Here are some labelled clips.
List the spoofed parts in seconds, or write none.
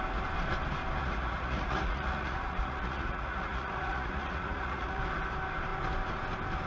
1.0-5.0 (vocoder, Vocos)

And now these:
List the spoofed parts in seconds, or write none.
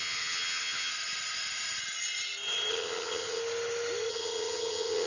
0.0-0.9 (vocoder, HiFi-GAN); 2.7-3.4; 4.1-5.1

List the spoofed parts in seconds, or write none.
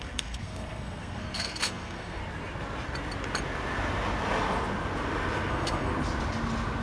0.0-2.2 (codec, SNAC); 5.5-5.9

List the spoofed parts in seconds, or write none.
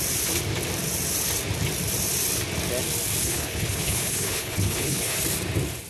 3.2-5.2 (codec, HILCodec)